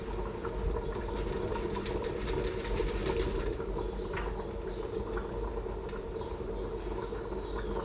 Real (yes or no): yes